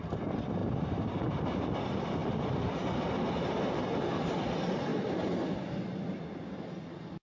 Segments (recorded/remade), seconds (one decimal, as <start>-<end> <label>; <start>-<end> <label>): 0.0-7.2 recorded